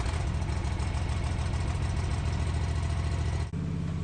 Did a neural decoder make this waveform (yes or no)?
no